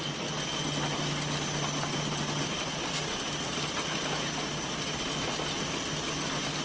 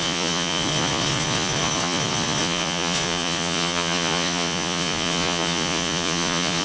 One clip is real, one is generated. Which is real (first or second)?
first